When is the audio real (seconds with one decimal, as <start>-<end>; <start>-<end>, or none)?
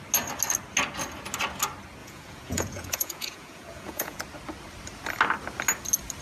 0.0-2.0; 4.2-6.2